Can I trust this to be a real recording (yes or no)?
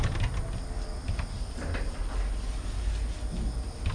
yes